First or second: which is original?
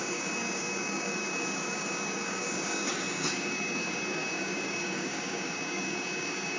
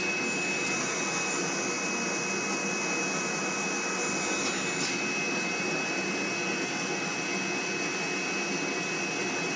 second